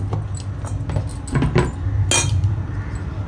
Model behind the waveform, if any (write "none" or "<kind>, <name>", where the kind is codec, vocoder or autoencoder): none